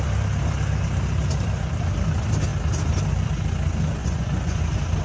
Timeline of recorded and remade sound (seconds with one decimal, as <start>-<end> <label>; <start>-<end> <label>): 0.0-4.0 recorded; 4.0-4.6 remade; 4.6-5.0 recorded

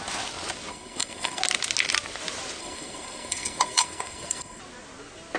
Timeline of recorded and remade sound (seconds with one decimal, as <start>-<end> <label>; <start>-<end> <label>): 0.0-0.7 recorded; 0.7-1.4 remade; 1.4-2.6 recorded; 2.6-4.6 remade; 4.6-5.4 recorded

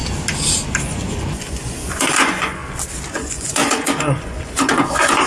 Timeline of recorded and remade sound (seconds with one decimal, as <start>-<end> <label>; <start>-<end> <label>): 0.0-0.8 recorded; 0.8-2.6 remade; 2.6-3.1 recorded; 3.1-5.3 remade

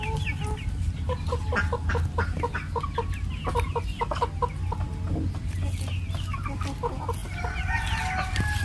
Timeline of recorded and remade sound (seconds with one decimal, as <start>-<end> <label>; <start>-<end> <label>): 0.0-8.6 recorded

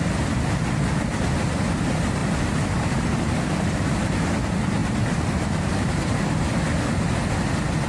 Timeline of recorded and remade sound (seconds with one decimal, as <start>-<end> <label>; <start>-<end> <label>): 0.0-2.2 recorded; 2.2-3.0 remade; 3.0-4.8 recorded; 4.8-6.2 remade; 6.2-7.9 recorded

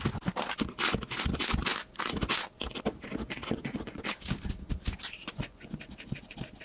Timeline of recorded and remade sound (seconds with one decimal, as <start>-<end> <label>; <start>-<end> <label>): 0.0-3.4 recorded; 3.4-4.0 remade; 4.0-5.2 recorded; 5.2-5.9 remade; 5.9-6.6 recorded

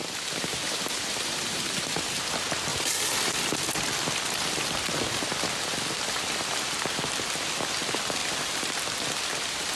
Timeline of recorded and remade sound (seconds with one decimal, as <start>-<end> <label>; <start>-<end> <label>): 0.0-2.2 remade; 2.2-2.7 recorded; 2.7-3.5 remade; 3.5-8.2 recorded; 8.2-8.8 remade; 8.8-9.8 recorded

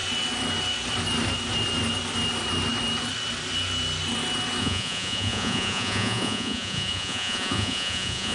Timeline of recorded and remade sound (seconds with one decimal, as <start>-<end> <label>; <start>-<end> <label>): 0.0-4.6 recorded; 4.6-8.3 remade